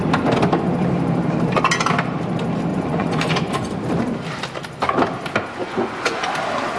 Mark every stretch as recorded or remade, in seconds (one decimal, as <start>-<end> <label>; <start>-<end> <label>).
0.0-2.7 recorded; 2.7-3.7 remade; 3.7-5.6 recorded; 5.6-6.3 remade; 6.3-6.8 recorded